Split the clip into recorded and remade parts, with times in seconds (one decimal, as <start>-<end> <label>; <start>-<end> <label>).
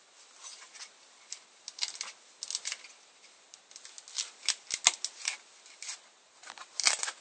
0.0-7.2 recorded